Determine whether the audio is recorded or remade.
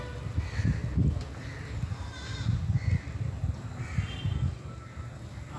recorded